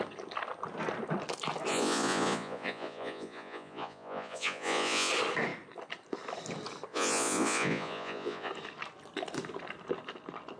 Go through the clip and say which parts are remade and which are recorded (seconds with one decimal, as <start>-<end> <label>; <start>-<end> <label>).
0.0-1.7 recorded; 1.7-5.1 remade; 5.1-6.9 recorded; 6.9-8.5 remade; 8.5-10.6 recorded